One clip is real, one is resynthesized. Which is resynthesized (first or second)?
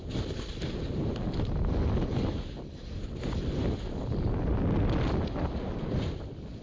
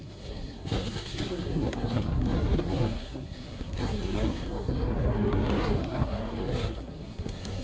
second